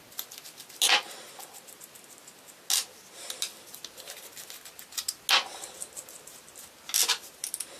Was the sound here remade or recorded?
recorded